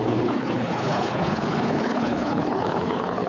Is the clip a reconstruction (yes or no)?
yes